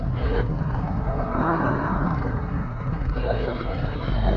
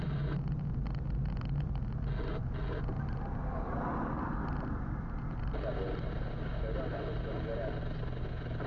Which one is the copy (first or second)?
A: first